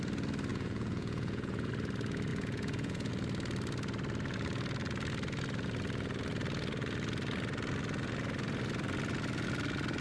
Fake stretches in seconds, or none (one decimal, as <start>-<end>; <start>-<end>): 0.5-1.7; 2.3-3.1